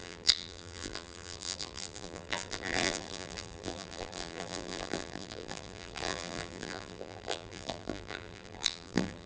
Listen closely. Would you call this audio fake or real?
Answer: fake